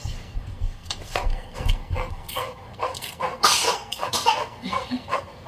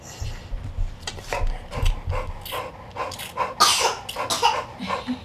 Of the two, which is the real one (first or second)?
second